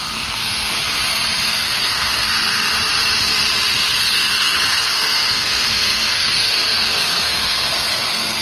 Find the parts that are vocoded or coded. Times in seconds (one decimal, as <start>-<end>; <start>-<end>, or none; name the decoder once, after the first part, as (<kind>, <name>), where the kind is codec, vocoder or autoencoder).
0.0-0.7 (codec, SNAC); 1.5-2.7; 4.0-8.4